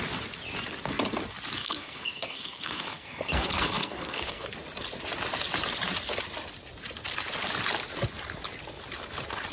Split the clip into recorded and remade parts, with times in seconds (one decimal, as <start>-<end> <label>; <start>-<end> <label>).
0.0-1.6 recorded; 1.6-4.5 remade; 4.5-9.5 recorded